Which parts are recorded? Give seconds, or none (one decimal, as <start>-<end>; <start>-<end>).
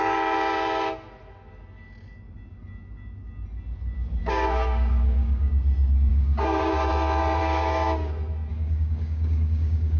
0.0-4.2; 5.5-6.1; 6.9-7.4; 8.1-8.5